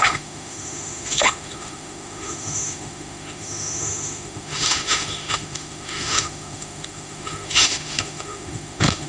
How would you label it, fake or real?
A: fake